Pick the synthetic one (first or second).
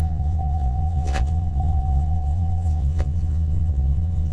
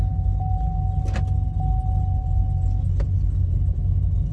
first